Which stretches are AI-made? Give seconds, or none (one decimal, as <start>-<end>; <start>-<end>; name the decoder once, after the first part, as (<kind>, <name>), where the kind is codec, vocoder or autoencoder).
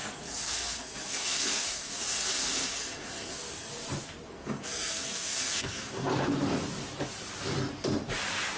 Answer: 0.0-3.7 (codec, SNAC); 4.3-6.1